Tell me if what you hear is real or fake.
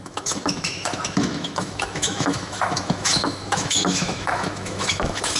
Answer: fake